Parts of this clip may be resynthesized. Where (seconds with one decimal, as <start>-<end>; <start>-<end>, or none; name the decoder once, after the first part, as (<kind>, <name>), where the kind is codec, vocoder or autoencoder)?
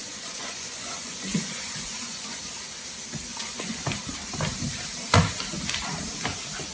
0.0-2.4 (vocoder, Vocos); 3.3-3.8